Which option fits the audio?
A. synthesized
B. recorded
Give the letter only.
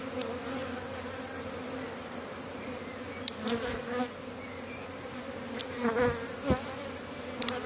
B